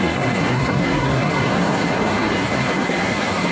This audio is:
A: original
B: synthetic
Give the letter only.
B